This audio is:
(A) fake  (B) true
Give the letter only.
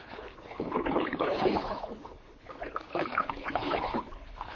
A